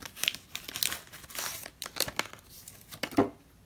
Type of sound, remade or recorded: recorded